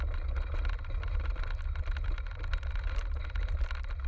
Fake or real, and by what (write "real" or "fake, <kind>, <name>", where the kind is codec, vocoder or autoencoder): real